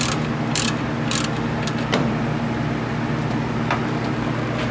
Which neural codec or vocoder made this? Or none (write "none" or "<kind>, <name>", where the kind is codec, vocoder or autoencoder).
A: none